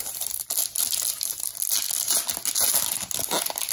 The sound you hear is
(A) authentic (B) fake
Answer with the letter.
A